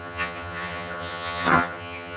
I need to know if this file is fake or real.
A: fake